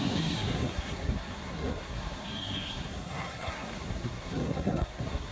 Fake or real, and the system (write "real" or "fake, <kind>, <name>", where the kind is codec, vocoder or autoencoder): fake, codec, SNAC